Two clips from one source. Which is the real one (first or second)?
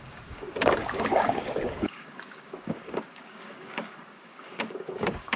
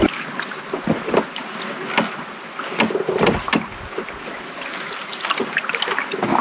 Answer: second